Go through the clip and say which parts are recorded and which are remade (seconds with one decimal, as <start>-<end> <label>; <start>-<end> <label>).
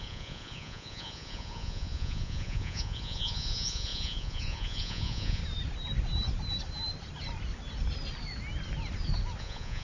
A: 0.0-5.4 remade; 5.4-9.4 recorded; 9.4-9.8 remade